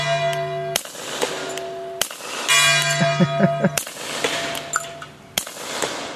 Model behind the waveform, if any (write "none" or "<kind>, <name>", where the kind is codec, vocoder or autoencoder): none